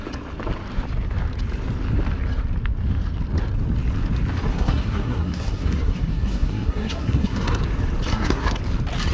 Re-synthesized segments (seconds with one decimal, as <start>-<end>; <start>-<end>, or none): 4.5-7.6; 8.1-8.6

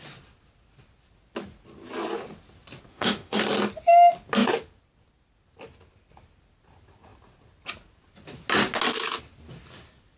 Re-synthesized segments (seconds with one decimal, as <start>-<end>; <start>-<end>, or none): 2.9-3.4